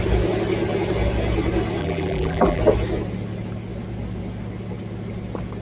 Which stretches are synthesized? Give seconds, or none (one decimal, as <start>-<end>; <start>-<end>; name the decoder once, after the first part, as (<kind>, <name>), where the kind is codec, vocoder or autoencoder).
1.8-2.6 (vocoder, BigVGAN v2)